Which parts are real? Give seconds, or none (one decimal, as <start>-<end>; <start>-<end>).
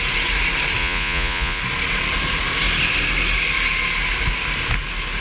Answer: 0.0-0.8; 1.6-5.2